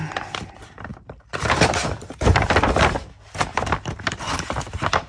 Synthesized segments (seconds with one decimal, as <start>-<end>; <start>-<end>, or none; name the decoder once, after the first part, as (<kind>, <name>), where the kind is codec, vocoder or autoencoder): 0.9-2.5 (vocoder, BigVGAN v2)